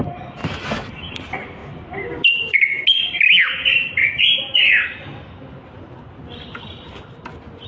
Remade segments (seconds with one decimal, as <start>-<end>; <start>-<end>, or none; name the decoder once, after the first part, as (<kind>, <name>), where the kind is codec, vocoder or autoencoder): none